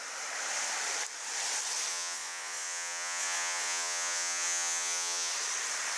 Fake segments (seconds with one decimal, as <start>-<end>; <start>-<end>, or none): 1.9-5.3